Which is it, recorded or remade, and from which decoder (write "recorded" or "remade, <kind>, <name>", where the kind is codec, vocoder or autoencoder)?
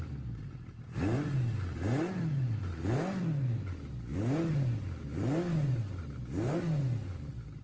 recorded